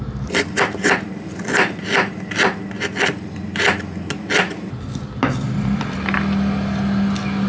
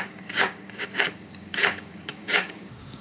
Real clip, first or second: first